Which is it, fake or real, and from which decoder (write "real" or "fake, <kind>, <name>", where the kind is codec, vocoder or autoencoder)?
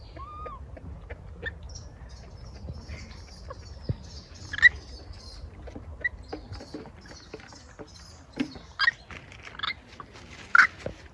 real